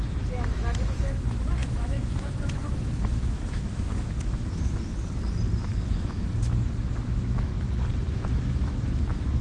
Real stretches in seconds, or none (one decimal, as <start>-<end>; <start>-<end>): 4.9-5.6; 7.5-8.1